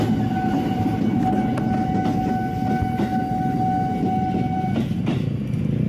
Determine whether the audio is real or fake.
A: real